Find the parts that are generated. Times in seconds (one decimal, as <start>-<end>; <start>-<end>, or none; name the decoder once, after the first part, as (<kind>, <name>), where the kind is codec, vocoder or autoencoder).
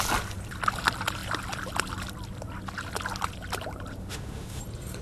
4.0-4.6 (autoencoder, DAC-VAE)